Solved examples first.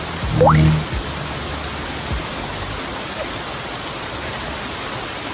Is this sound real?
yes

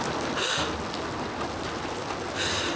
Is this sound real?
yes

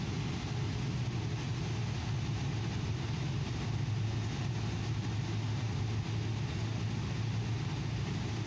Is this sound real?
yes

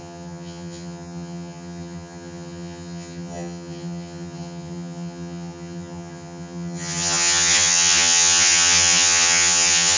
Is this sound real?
no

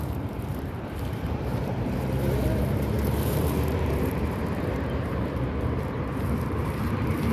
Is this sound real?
no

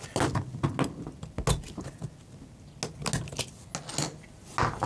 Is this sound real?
yes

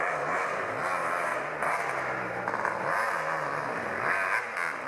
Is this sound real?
yes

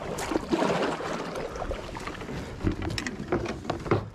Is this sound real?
yes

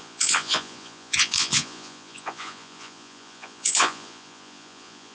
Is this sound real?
no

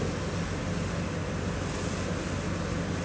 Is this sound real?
yes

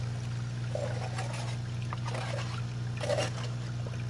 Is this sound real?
yes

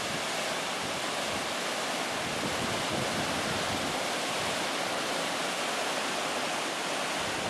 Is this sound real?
yes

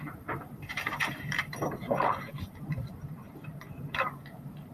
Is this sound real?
no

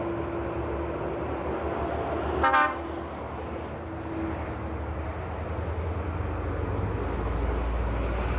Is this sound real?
yes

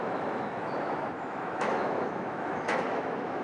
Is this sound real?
no